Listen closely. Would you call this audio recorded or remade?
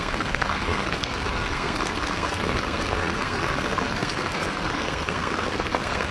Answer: remade